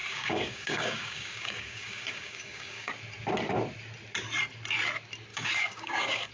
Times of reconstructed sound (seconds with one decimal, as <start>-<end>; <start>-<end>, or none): 0.0-2.9; 5.3-6.3

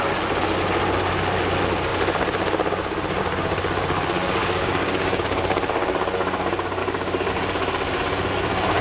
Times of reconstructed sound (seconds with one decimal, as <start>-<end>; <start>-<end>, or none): 4.4-5.2; 6.8-7.3

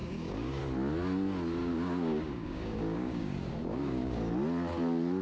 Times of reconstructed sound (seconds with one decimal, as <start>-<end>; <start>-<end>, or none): 0.0-0.6; 1.6-4.3

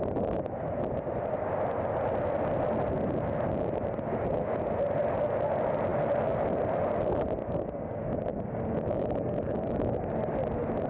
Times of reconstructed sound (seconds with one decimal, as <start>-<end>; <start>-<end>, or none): 7.4-10.2

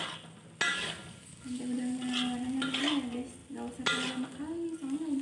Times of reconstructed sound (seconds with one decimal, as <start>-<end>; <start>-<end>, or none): 0.7-1.6

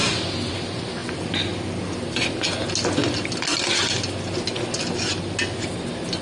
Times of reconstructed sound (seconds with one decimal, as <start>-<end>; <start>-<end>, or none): none